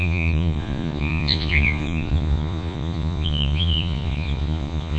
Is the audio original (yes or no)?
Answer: no